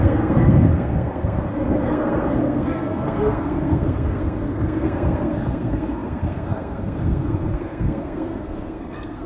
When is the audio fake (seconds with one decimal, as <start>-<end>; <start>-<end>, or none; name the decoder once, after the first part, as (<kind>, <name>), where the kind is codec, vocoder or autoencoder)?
0.0-9.3 (codec, SNAC)